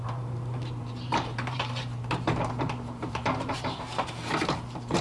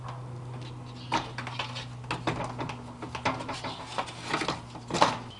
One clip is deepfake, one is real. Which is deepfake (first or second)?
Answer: first